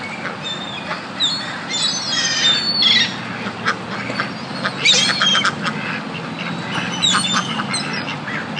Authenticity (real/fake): real